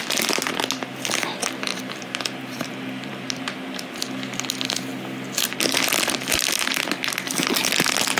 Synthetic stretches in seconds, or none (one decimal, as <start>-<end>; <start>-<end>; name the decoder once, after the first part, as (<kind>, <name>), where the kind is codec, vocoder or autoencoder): 1.7-3.1 (vocoder, BigVGAN v2)